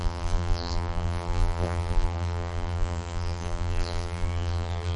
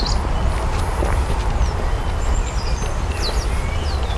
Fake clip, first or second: first